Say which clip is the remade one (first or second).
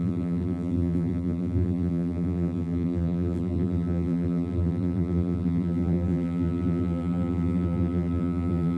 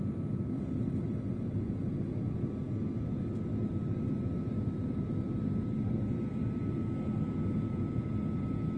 first